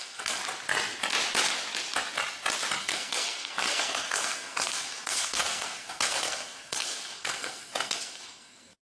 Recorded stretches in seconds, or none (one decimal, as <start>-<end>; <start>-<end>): 0.4-2.8